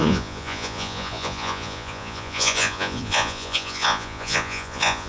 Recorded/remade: remade